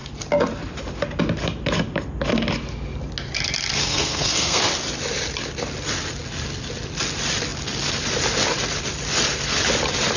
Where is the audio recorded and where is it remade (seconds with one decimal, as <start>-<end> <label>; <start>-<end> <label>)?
0.0-3.8 recorded; 3.8-4.7 remade; 4.7-10.2 recorded